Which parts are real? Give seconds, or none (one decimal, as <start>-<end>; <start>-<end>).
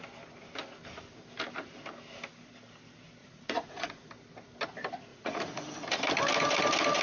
0.0-3.2; 4.1-5.1; 5.7-7.0